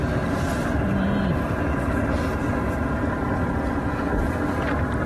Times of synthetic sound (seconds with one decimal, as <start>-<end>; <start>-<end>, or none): none